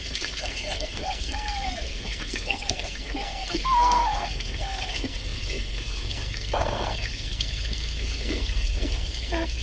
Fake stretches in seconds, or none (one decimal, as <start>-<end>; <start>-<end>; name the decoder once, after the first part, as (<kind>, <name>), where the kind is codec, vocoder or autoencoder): 0.0-9.6 (codec, SNAC)